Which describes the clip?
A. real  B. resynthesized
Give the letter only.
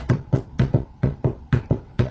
B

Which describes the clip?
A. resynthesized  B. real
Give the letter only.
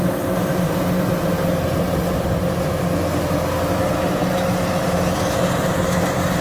B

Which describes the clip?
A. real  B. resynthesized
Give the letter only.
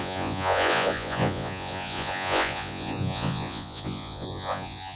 B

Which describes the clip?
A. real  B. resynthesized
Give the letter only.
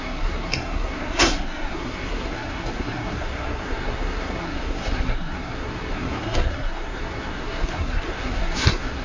B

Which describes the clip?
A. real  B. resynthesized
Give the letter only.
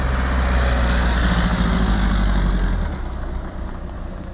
A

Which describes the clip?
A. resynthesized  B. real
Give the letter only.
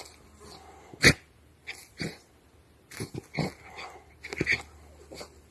B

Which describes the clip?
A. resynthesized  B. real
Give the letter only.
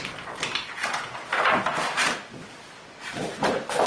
B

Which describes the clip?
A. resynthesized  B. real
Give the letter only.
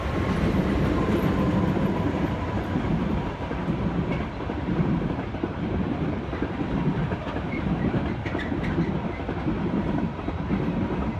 A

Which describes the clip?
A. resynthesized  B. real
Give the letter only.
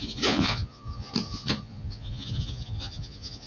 A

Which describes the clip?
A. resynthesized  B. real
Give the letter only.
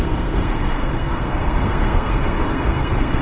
A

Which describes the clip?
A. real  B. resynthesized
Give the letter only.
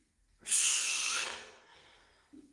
B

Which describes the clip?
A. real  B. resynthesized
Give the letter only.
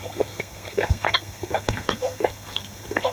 B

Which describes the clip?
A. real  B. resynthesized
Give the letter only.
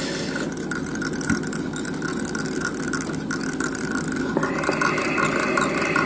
A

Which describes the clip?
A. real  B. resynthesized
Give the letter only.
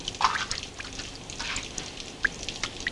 A